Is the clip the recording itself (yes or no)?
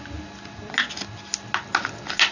yes